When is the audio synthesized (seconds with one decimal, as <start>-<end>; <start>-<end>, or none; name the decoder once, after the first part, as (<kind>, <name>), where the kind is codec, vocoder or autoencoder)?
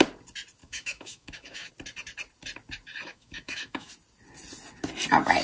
0.6-1.7 (autoencoder, DAC-VAE); 3.1-3.9